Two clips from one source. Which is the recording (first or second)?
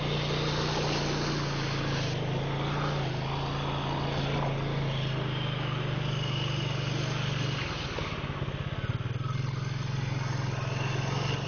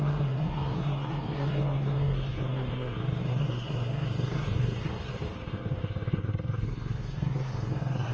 first